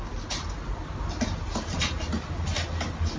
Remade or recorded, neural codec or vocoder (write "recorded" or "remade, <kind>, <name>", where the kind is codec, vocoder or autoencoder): recorded